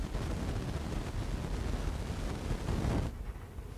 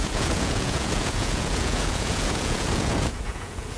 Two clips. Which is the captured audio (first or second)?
first